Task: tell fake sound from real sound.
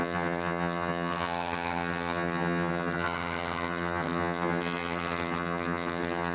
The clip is fake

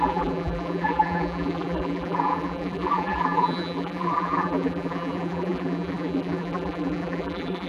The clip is fake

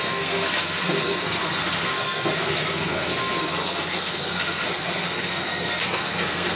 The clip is fake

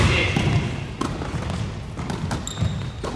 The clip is real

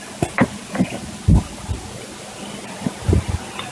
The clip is real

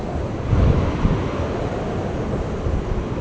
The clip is real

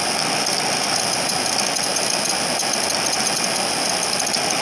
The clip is real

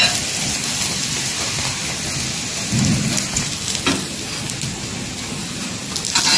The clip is real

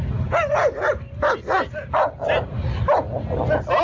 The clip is real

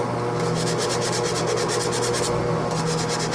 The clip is real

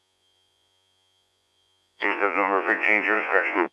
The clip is fake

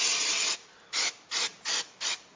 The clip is real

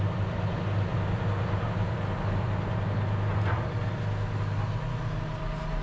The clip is real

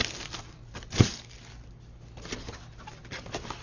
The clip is real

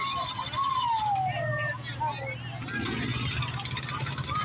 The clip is real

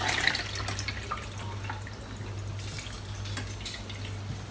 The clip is real